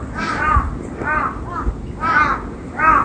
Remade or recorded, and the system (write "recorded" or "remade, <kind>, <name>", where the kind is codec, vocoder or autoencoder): recorded